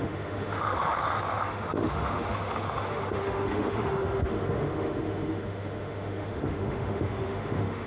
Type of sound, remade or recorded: remade